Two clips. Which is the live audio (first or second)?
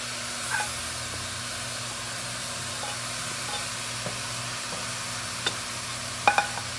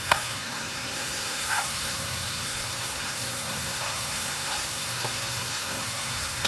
first